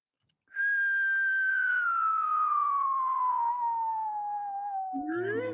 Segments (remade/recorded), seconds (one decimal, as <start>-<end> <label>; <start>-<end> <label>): 0.0-1.5 recorded; 1.5-3.5 remade; 3.5-5.5 recorded